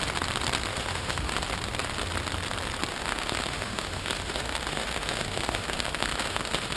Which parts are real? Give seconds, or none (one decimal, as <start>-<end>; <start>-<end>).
0.0-0.7; 1.4-2.9